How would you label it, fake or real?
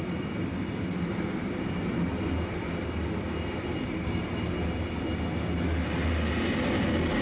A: real